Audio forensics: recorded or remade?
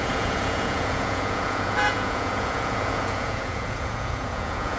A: remade